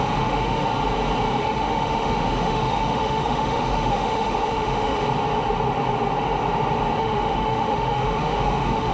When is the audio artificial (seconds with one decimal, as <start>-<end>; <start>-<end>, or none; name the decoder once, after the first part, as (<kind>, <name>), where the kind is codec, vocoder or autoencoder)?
0.0-0.7 (autoencoder, DAC-VAE); 1.4-5.0; 7.0-8.9